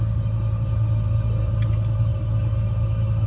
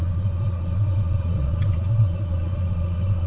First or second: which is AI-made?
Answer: second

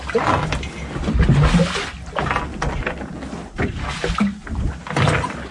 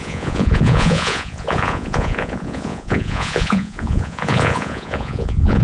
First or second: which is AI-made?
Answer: second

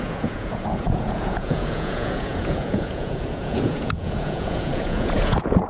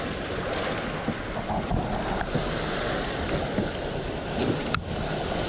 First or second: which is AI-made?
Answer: first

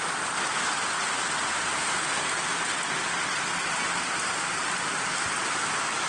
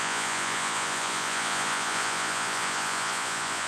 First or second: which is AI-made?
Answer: second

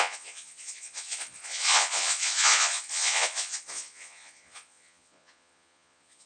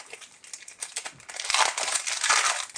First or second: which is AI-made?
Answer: first